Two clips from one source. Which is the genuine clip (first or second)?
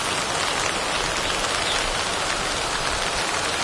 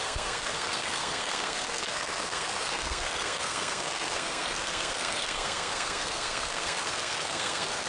first